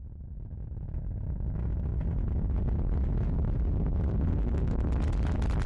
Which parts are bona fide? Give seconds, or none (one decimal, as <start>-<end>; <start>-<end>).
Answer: 0.0-4.1; 4.9-5.7